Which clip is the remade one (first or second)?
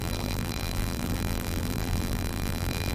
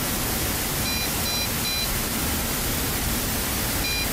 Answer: first